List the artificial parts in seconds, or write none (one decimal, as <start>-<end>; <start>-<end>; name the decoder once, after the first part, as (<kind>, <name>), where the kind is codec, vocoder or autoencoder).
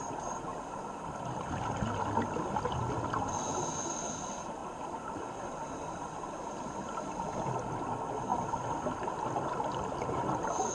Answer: none